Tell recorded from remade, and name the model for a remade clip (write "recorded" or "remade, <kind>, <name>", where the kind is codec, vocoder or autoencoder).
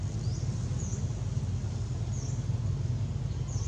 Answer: recorded